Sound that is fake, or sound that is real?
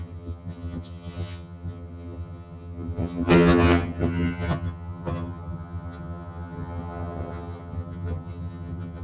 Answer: fake